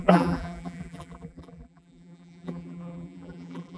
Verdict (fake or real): fake